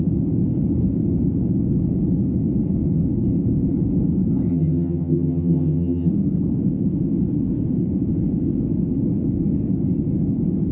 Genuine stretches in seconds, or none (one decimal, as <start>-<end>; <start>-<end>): 0.0-4.5; 6.1-10.7